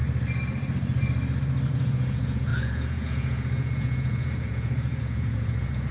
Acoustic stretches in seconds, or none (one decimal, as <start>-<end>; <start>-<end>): 0.0-1.7